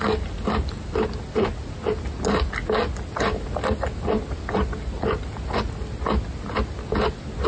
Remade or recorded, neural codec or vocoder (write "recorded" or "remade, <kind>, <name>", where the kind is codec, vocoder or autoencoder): recorded